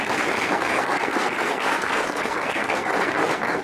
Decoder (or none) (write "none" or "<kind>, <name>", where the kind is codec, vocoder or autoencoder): codec, SNAC